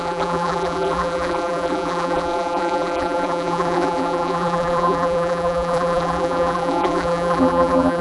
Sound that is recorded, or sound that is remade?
remade